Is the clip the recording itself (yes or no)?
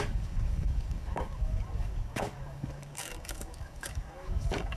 no